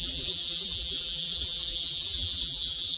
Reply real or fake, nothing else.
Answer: fake